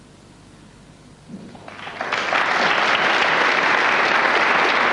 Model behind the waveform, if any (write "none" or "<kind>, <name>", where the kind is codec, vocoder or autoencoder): none